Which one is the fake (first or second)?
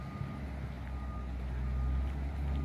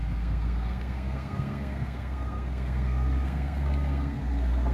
second